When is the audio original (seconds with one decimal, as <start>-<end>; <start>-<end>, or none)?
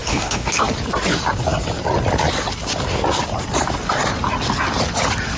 0.5-5.4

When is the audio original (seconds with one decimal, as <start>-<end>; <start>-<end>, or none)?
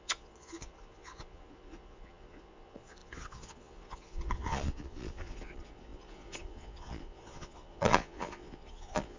none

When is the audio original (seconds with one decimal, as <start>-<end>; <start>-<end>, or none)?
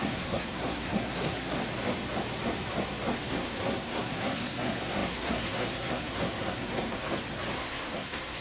1.6-3.3; 7.0-7.5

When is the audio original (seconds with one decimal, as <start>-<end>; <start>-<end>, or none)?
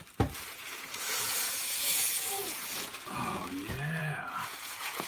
0.0-0.5; 3.4-4.0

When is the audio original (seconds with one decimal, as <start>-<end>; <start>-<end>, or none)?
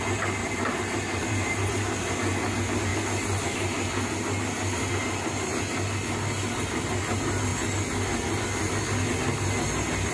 0.0-0.4; 1.7-10.1